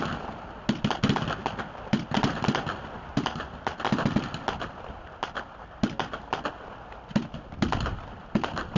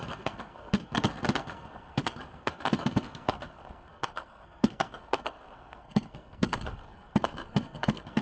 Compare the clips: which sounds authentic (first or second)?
first